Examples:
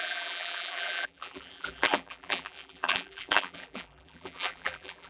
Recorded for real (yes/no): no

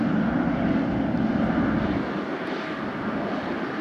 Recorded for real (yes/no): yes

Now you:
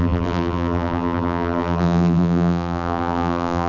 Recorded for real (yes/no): no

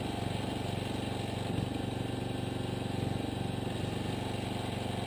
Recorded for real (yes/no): yes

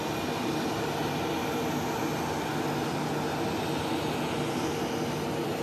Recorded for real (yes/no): yes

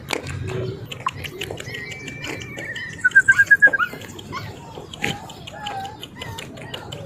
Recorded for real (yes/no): yes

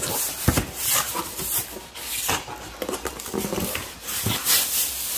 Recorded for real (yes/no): yes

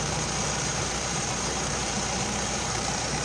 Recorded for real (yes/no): no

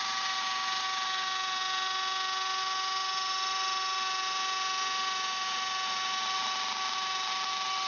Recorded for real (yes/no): yes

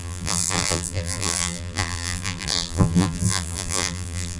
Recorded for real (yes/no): no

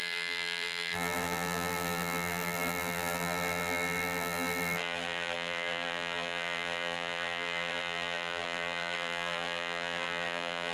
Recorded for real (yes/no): no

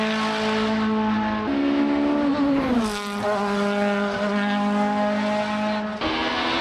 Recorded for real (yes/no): yes